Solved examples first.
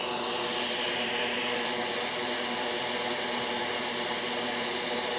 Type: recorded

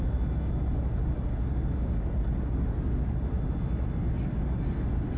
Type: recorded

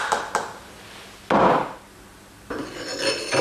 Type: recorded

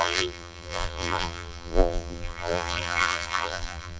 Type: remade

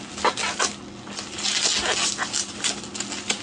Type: recorded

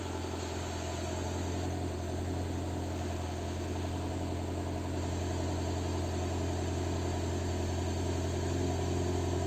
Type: recorded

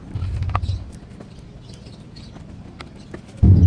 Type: recorded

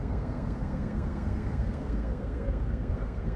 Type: remade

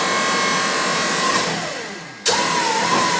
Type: recorded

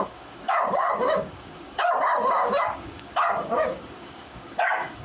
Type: remade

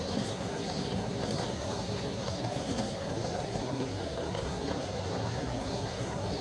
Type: remade